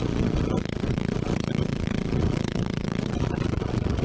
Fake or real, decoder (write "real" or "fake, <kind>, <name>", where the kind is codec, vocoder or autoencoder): fake, vocoder, Vocos